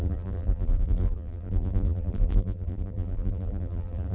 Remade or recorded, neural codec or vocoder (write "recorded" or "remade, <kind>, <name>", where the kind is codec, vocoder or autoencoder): remade, vocoder, BigVGAN v2